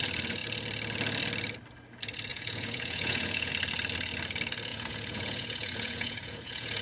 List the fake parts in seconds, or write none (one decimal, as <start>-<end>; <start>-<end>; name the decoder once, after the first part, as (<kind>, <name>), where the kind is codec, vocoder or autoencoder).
2.3-3.5 (vocoder, Vocos); 4.7-6.8